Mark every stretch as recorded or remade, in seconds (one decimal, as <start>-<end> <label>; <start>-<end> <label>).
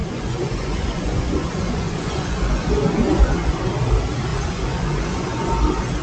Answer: 0.0-3.6 remade; 3.6-4.3 recorded; 4.3-5.5 remade; 5.5-6.0 recorded